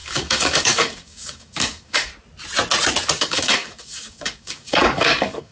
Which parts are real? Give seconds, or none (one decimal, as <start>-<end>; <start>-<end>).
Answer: 2.1-3.2